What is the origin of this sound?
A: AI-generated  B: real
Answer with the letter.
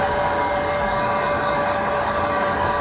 A